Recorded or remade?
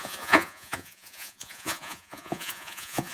remade